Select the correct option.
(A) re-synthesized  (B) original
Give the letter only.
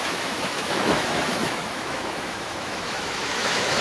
A